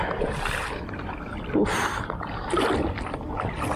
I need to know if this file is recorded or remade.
recorded